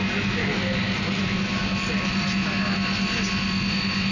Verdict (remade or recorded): recorded